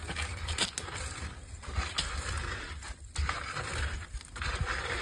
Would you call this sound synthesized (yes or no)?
no